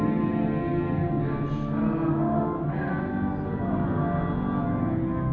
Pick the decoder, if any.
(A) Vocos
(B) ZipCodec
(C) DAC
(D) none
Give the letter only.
D